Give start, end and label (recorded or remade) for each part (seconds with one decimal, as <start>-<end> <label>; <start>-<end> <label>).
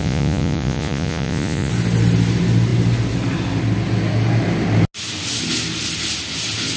0.0-1.7 remade; 1.7-6.8 recorded